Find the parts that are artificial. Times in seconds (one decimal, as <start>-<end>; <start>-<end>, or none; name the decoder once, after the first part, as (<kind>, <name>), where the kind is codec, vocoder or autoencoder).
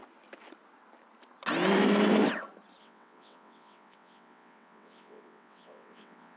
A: 2.8-6.4 (vocoder, WaveNeXt)